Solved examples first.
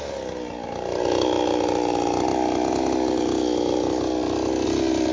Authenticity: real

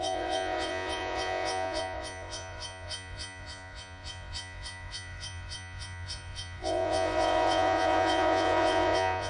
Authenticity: fake